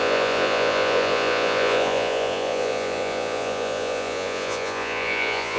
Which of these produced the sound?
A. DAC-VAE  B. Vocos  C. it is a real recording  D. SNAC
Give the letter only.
B